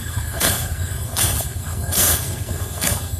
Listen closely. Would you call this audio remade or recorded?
remade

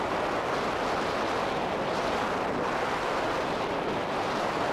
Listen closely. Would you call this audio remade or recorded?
recorded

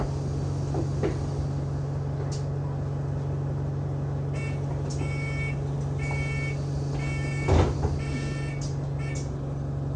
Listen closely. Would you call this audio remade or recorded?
recorded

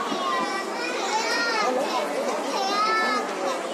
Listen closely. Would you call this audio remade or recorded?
recorded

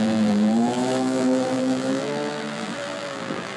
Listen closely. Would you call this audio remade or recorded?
remade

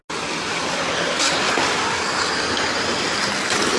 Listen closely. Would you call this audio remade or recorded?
recorded